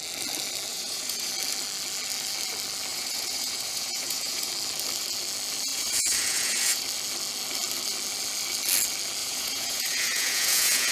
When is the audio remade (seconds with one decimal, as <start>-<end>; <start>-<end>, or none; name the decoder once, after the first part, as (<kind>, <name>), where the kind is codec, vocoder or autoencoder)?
0.7-1.3 (vocoder, Vocos); 2.9-4.5; 5.7-6.8; 9.2-10.9